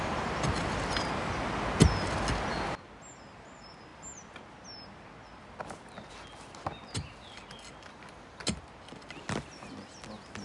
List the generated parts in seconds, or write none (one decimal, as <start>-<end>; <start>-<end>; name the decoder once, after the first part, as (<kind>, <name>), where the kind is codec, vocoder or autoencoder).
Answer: none

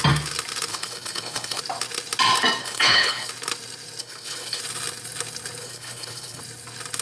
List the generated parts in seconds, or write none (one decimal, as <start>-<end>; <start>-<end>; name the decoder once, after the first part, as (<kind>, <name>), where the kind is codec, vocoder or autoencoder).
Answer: 0.7-1.6 (codec, HILCodec); 2.6-3.3; 4.0-4.6; 5.6-6.4

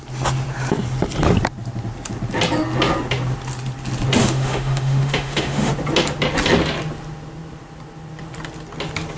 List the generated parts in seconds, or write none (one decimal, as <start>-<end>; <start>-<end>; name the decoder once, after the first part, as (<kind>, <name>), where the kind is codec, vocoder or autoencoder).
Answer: 4.2-5.7 (autoencoder, DAC-VAE)

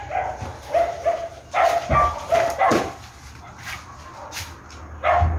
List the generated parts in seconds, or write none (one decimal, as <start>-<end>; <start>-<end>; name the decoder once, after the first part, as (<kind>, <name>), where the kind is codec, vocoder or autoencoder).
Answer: 2.7-3.4 (vocoder, BigVGAN v2)

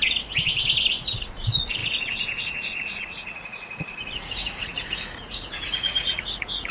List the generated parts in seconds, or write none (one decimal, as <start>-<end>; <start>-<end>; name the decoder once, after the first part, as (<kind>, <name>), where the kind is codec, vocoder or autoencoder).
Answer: 0.9-6.7 (vocoder, Vocos)

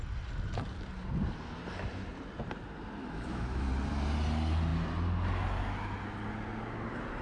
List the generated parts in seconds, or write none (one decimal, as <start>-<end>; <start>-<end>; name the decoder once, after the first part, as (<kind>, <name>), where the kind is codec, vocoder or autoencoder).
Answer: 3.0-3.7 (autoencoder, DAC-VAE)